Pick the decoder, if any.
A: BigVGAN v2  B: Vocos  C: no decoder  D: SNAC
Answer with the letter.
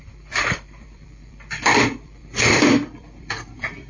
A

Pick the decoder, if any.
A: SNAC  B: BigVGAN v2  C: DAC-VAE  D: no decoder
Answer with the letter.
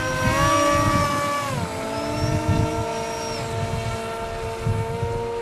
D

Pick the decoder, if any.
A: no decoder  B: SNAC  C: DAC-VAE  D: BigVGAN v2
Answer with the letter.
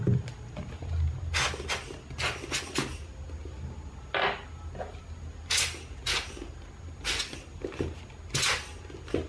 A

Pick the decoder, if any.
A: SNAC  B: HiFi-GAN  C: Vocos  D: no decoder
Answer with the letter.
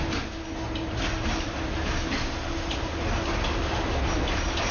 D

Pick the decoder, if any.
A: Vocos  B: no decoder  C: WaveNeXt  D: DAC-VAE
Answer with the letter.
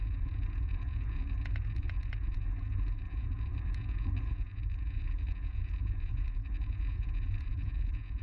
A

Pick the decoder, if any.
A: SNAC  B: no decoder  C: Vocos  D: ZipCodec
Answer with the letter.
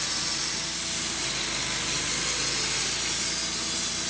B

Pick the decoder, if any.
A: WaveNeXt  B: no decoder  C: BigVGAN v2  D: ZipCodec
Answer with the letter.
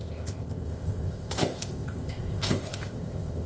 D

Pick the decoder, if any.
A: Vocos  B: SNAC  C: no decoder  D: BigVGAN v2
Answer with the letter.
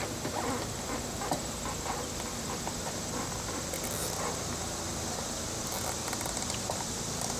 D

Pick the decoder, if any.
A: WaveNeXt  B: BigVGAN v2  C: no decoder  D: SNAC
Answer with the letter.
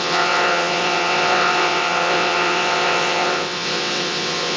A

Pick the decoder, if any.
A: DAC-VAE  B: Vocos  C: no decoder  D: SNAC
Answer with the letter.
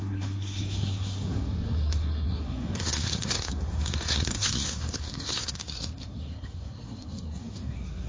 D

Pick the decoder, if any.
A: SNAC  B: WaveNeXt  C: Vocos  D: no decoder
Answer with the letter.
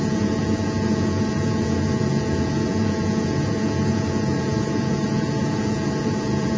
C